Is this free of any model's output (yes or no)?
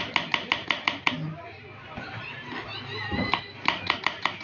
yes